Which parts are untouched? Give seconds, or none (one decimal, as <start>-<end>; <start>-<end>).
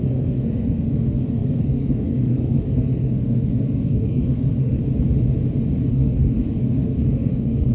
4.8-5.9